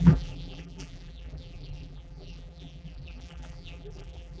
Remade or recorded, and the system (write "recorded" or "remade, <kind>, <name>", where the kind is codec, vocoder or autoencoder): remade, vocoder, BigVGAN v2